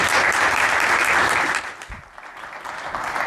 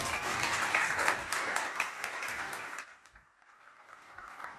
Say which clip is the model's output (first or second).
second